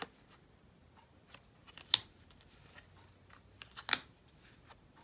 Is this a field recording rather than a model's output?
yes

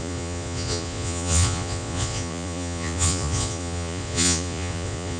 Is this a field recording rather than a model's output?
no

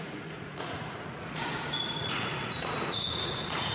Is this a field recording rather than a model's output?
no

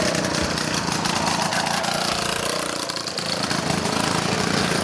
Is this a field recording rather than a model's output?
yes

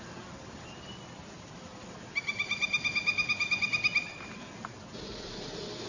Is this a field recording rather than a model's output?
yes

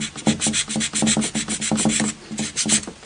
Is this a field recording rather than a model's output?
yes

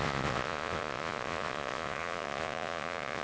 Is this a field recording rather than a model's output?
no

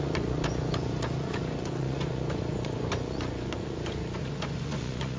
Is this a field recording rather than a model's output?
no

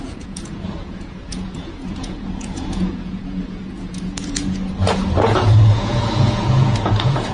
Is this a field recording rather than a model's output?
no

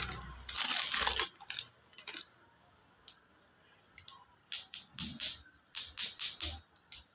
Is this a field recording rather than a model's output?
yes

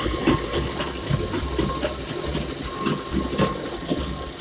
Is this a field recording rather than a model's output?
yes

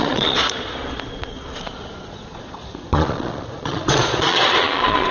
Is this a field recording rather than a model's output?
no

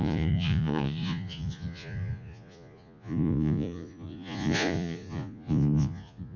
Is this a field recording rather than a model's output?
no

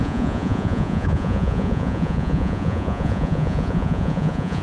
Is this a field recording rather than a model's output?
no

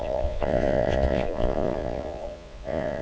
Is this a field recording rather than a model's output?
no